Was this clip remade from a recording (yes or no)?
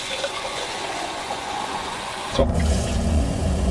yes